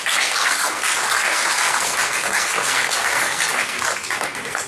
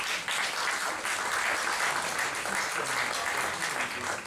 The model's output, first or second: first